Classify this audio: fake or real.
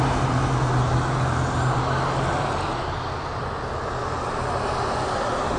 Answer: real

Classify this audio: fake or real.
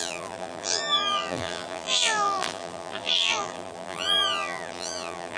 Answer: fake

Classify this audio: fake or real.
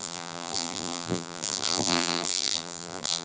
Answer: fake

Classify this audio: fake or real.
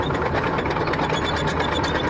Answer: fake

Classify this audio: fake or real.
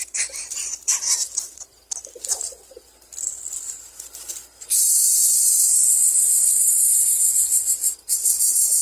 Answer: real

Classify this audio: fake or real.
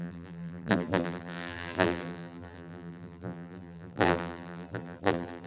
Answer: fake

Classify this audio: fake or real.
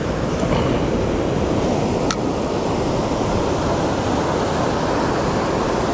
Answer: real